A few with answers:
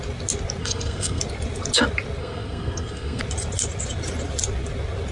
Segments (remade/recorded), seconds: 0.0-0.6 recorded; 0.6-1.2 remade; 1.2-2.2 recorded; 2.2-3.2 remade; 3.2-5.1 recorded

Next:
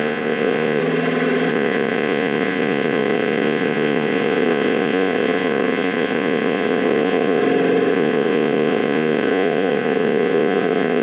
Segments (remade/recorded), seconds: 0.0-0.8 remade; 0.8-1.5 recorded; 1.5-7.4 remade; 7.4-7.9 recorded; 7.9-11.0 remade

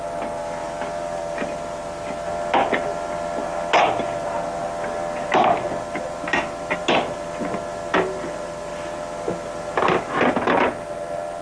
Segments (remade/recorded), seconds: 0.0-11.4 recorded

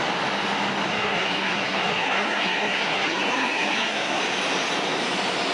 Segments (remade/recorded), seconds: 0.0-0.9 recorded; 0.9-4.2 remade; 4.2-5.5 recorded

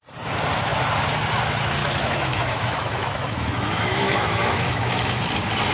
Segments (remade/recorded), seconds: 0.0-1.8 recorded; 1.8-5.2 remade; 5.2-5.7 recorded

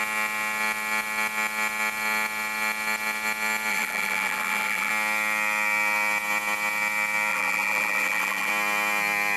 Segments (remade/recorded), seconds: 0.0-3.7 recorded; 3.7-4.9 remade; 4.9-7.3 recorded; 7.3-8.5 remade; 8.5-9.4 recorded

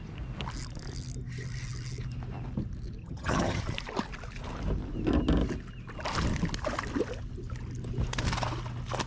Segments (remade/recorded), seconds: 0.0-3.0 recorded; 3.0-3.6 remade; 3.6-9.1 recorded